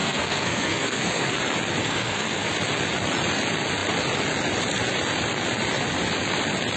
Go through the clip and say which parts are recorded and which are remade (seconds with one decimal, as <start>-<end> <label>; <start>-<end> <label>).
0.0-1.4 remade; 1.4-1.8 recorded; 1.8-2.5 remade; 2.5-6.8 recorded